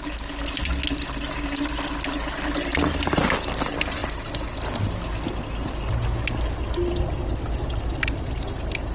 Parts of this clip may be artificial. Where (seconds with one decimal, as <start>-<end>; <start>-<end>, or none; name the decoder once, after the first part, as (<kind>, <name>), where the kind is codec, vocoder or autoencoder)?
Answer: none